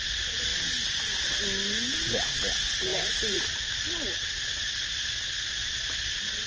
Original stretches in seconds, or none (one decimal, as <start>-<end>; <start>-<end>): 0.0-2.9; 3.8-6.5